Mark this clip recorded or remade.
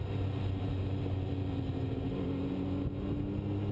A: recorded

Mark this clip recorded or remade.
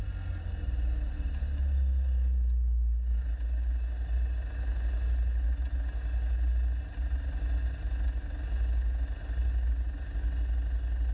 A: recorded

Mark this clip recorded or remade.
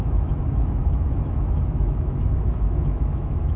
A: remade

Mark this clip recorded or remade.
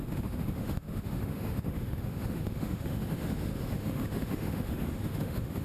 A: remade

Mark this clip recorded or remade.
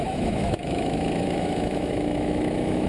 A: remade